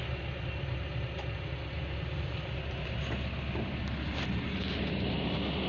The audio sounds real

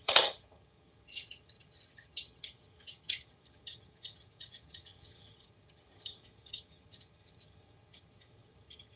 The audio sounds fake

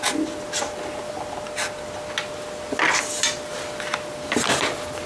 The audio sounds real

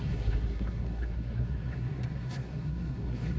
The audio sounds fake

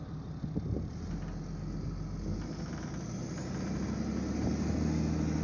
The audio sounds real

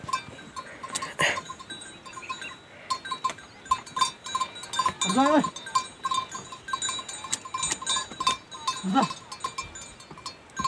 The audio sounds real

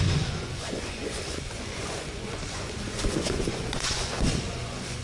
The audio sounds fake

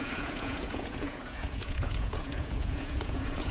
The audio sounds fake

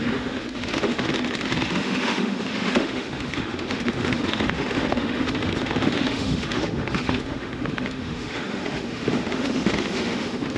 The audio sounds fake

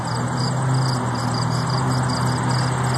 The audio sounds real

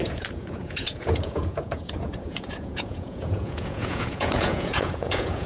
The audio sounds fake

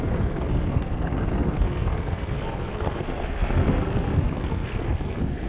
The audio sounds fake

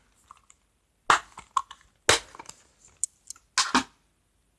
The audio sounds real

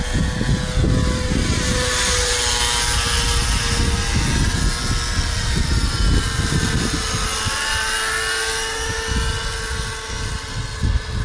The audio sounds real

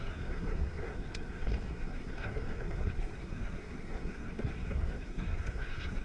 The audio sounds fake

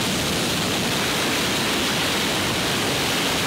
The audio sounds real